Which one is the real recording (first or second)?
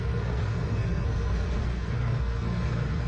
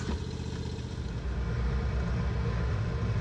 second